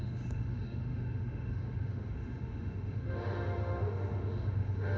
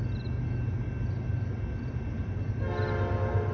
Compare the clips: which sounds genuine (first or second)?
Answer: second